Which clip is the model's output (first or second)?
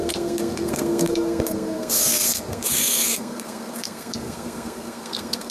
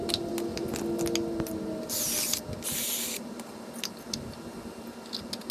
first